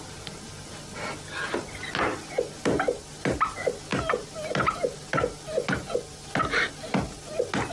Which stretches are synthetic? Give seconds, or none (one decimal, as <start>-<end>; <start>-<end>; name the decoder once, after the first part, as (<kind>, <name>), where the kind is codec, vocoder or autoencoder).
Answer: none